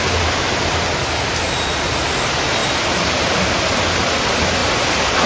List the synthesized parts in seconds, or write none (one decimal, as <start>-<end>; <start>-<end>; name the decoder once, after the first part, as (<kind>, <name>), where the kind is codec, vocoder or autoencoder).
2.6-3.6 (vocoder, BigVGAN v2); 4.6-5.3